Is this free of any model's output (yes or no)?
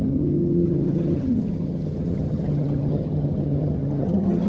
no